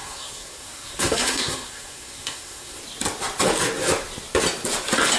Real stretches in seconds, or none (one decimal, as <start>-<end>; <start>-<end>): 2.8-5.2